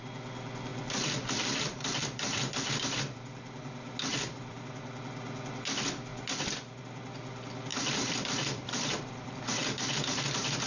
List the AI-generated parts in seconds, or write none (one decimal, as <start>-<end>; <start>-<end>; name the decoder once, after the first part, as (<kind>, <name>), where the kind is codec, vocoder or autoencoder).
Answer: 0.7-3.0 (vocoder, BigVGAN v2); 4.1-4.6; 7.7-9.8